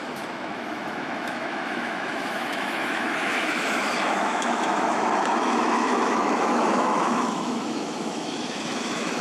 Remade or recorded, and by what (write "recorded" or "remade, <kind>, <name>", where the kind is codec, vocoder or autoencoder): remade, autoencoder, DAC-VAE